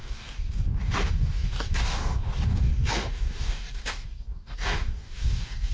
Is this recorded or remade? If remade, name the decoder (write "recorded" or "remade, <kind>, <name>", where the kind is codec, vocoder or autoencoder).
remade, codec, DAC